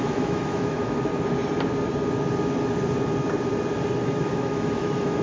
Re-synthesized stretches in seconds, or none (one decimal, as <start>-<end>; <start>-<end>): 0.0-1.1; 4.2-5.2